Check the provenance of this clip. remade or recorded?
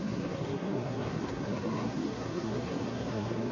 remade